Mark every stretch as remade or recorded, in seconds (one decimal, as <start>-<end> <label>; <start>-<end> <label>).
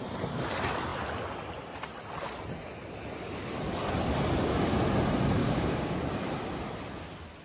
0.0-5.4 recorded; 5.4-5.9 remade; 5.9-7.4 recorded